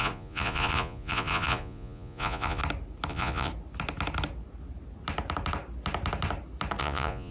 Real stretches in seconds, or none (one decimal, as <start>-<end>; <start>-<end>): 2.6-3.1; 3.5-6.8